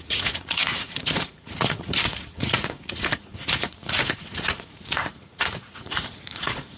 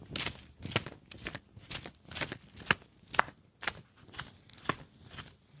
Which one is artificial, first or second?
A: first